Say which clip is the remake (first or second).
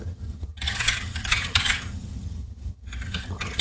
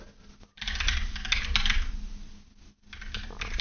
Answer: first